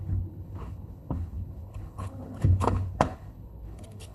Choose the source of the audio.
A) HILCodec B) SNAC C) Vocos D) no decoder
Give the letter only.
A